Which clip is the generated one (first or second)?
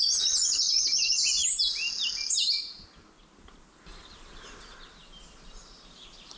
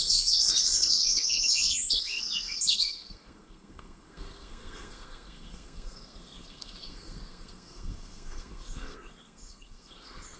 second